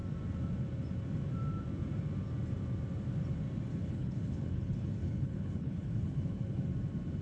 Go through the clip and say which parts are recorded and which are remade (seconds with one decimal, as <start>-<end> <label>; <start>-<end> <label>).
0.0-3.7 recorded; 3.7-6.6 remade; 6.6-7.2 recorded